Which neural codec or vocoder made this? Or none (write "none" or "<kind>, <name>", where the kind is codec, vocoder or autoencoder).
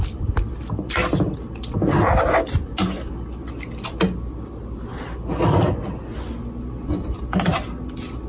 none